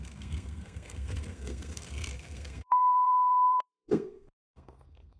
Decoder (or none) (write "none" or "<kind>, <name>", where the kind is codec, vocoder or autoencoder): codec, SNAC